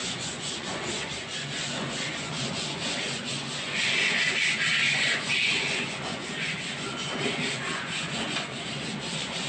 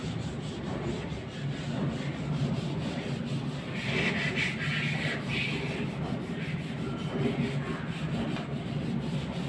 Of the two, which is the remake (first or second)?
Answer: first